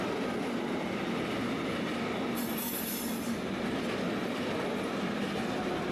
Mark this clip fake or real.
real